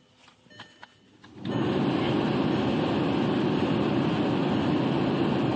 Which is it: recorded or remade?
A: recorded